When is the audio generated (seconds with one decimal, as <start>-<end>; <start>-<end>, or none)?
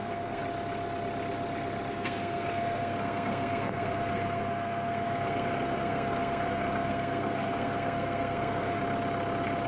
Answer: 0.0-0.4; 1.9-8.8